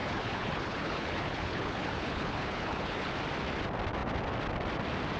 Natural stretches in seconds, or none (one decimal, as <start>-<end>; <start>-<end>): 3.1-5.2